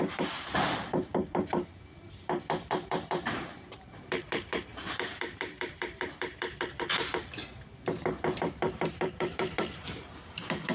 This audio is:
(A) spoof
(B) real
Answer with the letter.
A